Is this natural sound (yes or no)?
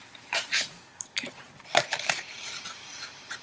no